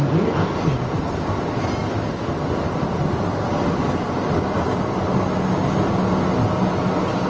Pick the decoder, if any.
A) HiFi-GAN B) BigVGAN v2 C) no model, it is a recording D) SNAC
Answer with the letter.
C